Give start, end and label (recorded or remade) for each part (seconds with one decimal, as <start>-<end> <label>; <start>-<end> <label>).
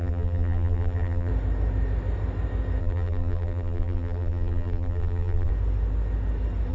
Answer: 0.0-1.3 remade; 1.3-2.8 recorded; 2.8-5.5 remade; 5.5-6.7 recorded